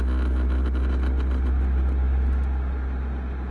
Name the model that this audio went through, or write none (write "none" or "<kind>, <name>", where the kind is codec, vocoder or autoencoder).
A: none